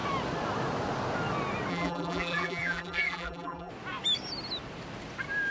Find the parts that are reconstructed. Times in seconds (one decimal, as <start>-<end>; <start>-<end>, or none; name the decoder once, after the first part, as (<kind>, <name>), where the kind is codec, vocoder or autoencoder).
1.7-3.7 (vocoder, BigVGAN v2)